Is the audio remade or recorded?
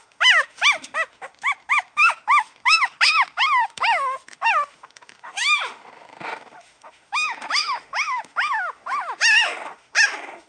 remade